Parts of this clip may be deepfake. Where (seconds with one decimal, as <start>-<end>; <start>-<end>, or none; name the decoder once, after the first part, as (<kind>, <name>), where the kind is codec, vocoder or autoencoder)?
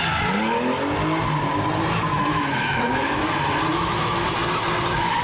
2.1-3.3 (autoencoder, DAC-VAE); 3.7-4.3